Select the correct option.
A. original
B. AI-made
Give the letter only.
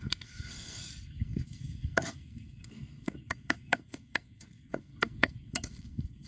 B